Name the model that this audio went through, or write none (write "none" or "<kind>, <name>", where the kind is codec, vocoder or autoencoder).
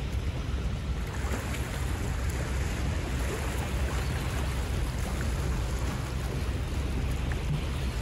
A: none